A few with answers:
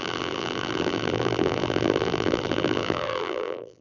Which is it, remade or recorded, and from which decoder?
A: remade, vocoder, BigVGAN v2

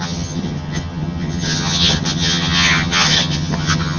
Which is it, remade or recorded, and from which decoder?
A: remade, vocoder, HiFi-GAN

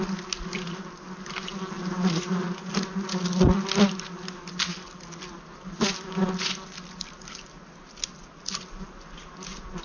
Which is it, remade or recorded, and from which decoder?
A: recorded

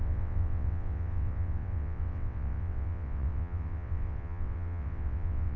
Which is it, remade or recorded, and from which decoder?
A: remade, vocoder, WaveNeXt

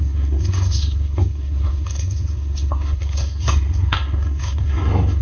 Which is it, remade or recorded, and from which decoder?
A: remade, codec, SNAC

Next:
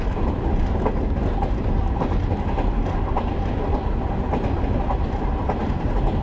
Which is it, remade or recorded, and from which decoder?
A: recorded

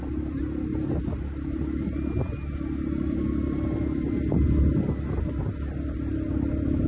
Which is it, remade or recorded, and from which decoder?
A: recorded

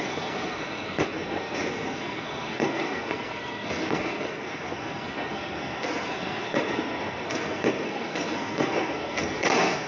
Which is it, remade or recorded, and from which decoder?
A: remade, codec, SNAC